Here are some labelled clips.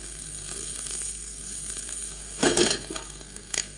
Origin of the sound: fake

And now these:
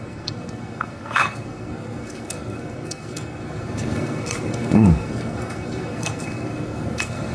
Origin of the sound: fake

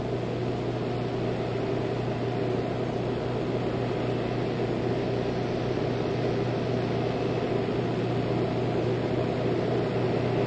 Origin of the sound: real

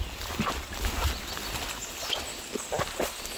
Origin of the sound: real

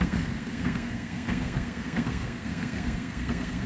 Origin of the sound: fake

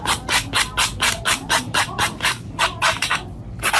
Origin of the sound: real